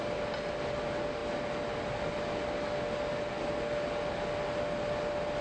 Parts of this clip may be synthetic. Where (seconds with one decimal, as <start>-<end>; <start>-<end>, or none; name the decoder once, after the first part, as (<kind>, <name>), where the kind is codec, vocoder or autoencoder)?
none